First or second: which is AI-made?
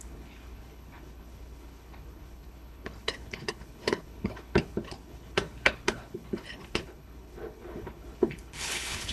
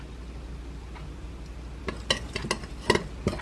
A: first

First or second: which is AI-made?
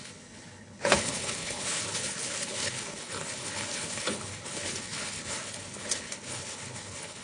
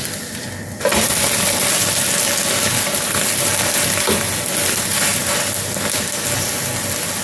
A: first